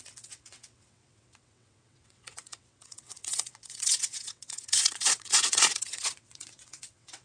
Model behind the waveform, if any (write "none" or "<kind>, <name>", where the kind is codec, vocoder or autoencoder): vocoder, WaveNeXt